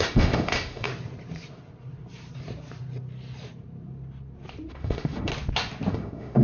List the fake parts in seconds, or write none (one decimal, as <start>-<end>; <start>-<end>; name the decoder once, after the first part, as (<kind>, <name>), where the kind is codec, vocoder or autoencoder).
0.0-0.9 (autoencoder, DAC-VAE); 4.7-5.3; 5.9-6.4